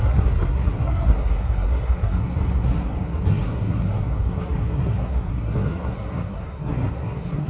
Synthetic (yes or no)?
yes